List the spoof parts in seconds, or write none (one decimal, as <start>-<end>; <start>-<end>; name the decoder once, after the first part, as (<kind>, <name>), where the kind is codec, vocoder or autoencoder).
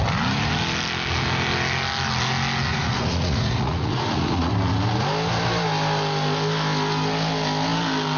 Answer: 2.7-4.5 (vocoder, Vocos)